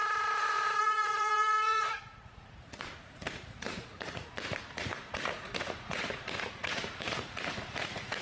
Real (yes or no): no